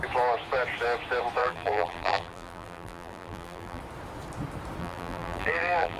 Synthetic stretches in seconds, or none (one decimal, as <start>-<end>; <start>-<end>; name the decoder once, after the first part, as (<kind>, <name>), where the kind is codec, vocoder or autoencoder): 1.4-3.8 (vocoder, BigVGAN v2); 4.8-6.0